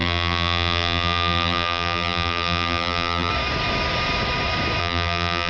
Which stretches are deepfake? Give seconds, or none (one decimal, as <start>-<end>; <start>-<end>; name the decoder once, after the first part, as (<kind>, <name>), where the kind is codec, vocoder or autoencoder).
0.0-3.3 (vocoder, BigVGAN v2); 4.8-5.5